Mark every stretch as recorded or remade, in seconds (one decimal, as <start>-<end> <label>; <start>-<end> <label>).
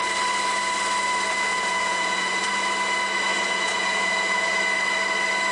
0.0-1.5 recorded; 1.5-2.4 remade; 2.4-3.3 recorded; 3.3-4.6 remade; 4.6-5.5 recorded